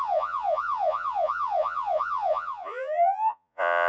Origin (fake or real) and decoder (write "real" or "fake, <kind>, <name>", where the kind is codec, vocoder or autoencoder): fake, vocoder, Vocos